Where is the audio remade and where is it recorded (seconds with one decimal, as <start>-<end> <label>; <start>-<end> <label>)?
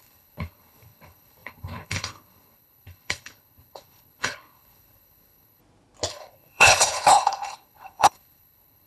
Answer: 0.0-5.6 remade; 5.6-6.1 recorded; 6.1-8.9 remade